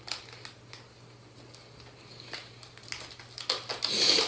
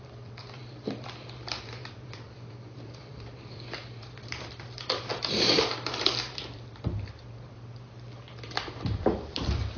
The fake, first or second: second